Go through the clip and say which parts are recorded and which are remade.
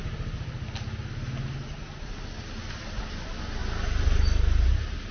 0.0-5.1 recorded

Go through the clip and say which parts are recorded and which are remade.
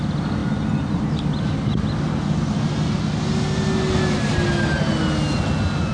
0.0-5.9 recorded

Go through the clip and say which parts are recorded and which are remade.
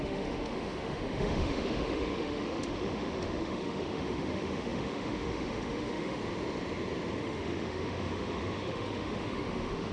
0.0-6.2 remade; 6.2-7.2 recorded; 7.2-9.9 remade